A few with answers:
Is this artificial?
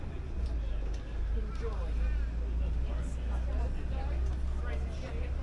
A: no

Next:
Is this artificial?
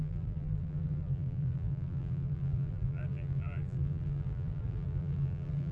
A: yes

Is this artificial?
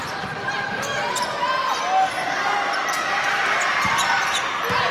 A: no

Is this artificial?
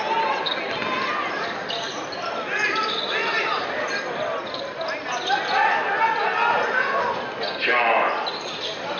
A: no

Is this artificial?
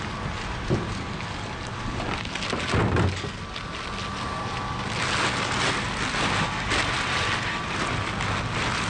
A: no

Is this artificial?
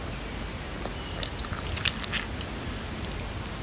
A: no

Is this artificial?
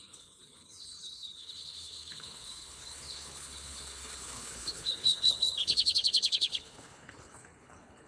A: yes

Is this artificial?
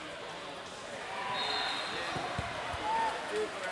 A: no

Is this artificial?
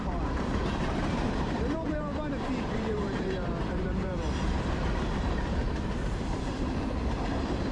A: yes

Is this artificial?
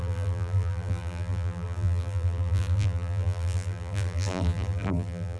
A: yes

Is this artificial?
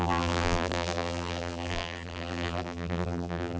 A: yes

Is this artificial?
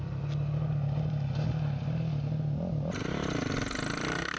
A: no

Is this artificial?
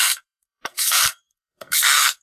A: yes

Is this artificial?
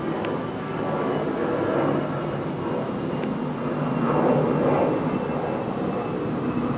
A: no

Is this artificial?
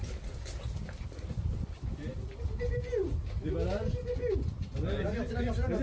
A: no